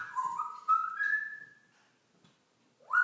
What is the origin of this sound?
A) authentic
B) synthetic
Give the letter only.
A